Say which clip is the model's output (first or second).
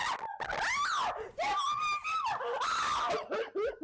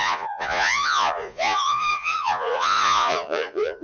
second